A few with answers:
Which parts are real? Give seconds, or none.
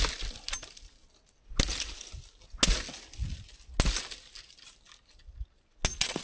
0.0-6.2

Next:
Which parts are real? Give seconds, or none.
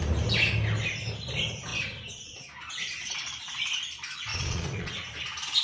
0.0-4.3; 4.9-5.6